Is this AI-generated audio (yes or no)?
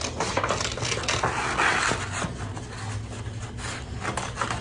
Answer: no